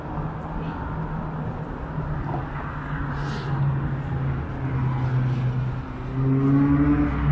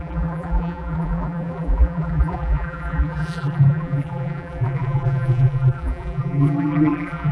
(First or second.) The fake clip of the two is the second